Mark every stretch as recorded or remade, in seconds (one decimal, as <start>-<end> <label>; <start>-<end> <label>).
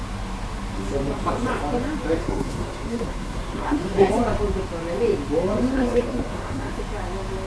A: 0.0-2.2 recorded; 2.2-4.1 remade; 4.1-5.7 recorded; 5.7-6.7 remade; 6.7-7.5 recorded